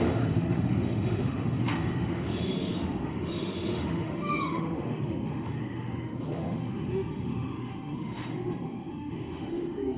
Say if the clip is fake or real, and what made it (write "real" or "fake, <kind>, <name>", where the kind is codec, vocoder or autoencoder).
fake, autoencoder, DAC-VAE